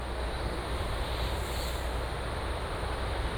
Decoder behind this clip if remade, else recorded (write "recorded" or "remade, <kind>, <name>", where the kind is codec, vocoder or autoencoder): recorded